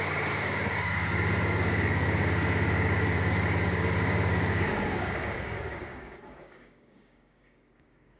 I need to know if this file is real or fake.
fake